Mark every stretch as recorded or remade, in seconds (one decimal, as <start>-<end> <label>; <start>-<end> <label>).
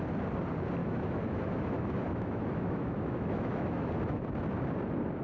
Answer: 0.0-0.8 recorded; 0.8-3.9 remade; 3.9-5.2 recorded